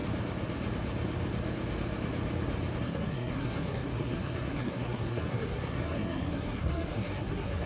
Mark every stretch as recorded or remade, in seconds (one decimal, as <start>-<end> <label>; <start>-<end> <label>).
0.0-2.8 recorded; 2.8-7.7 remade